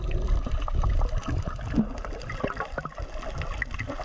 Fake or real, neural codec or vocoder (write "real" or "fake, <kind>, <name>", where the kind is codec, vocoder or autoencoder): real